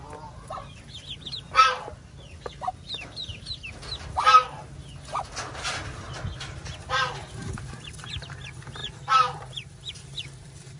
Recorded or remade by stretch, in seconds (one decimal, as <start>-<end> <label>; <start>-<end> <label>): 0.0-3.3 remade; 3.3-7.2 recorded; 7.2-8.8 remade; 8.8-9.9 recorded; 9.9-10.8 remade